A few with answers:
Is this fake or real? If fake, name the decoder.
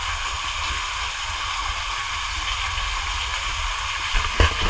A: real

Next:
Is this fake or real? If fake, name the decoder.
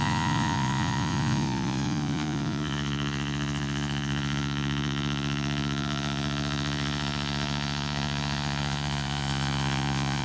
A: fake, vocoder, Vocos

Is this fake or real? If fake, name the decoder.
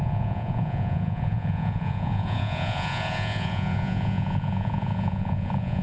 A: fake, vocoder, Vocos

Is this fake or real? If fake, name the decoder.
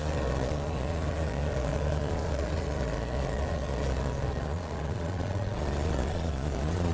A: fake, vocoder, Vocos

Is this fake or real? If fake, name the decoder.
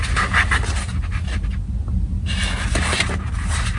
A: real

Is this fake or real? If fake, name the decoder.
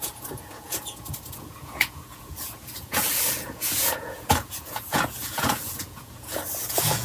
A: fake, vocoder, Vocos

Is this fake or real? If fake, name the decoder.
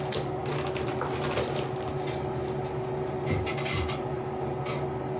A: real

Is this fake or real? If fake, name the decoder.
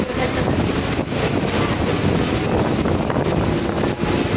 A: real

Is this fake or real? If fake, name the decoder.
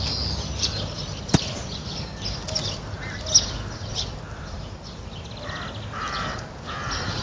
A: real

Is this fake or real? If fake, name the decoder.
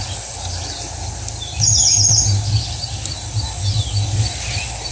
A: real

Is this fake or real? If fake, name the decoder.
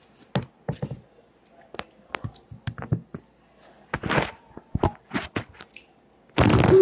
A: real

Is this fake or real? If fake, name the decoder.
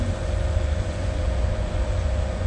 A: fake, vocoder, Vocos